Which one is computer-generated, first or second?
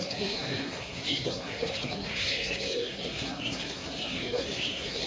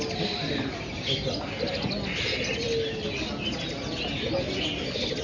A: first